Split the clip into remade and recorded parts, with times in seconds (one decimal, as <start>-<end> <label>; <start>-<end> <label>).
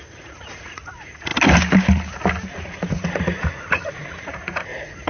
0.0-1.3 remade; 1.3-2.5 recorded; 2.5-5.1 remade